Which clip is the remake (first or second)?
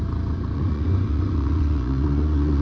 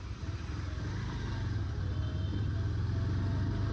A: first